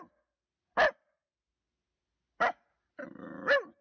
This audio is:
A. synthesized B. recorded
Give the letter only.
B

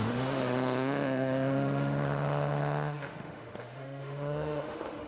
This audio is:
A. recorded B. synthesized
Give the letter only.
B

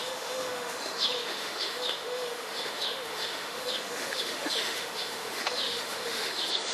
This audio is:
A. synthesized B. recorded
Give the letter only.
A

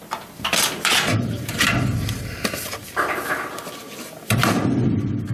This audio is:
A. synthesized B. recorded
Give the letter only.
B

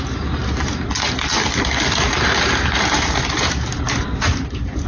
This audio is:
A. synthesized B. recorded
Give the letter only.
A